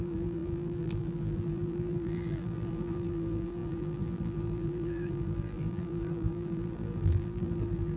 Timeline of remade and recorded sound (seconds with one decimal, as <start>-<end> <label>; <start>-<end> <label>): 0.0-8.0 remade